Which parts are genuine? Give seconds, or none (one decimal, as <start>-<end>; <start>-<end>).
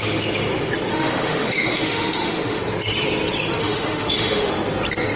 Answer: 0.0-0.9; 2.6-3.6; 4.5-5.2